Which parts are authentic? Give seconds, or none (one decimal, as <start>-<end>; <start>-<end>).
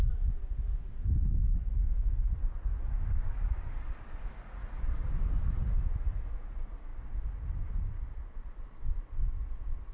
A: 0.0-1.6; 2.3-9.9